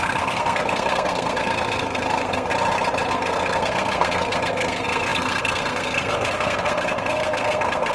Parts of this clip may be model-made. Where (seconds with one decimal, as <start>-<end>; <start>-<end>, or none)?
0.0-2.5; 3.1-7.9